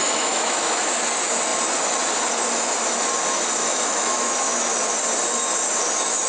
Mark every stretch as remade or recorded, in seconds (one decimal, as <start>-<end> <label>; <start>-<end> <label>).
0.0-0.8 remade; 0.8-3.6 recorded; 3.6-4.7 remade; 4.7-6.3 recorded